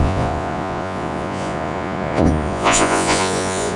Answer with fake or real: fake